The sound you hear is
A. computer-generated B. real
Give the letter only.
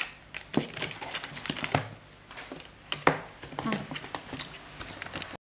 B